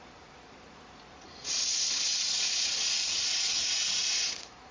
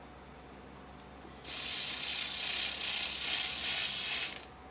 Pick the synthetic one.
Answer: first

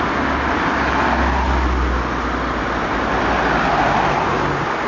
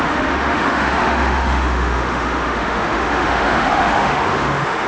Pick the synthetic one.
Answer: second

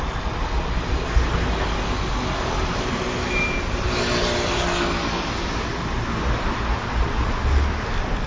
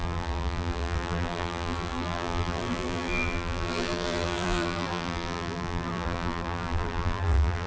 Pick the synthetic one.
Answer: second